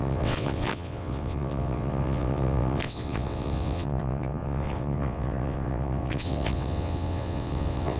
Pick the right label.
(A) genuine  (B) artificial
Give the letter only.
B